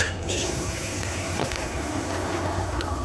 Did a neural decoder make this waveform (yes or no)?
yes